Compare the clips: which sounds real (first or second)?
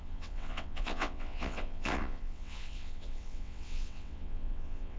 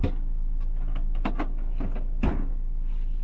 second